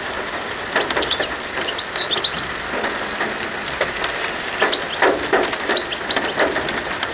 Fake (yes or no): no